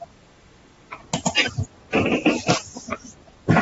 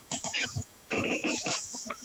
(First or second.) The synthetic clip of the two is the second